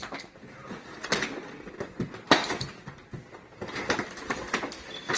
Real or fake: real